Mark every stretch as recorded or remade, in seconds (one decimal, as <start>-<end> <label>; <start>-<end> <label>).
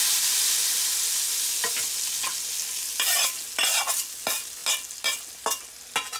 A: 0.0-6.2 recorded